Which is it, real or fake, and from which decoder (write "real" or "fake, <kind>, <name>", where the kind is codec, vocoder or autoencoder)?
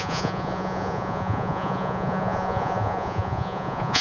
fake, vocoder, Vocos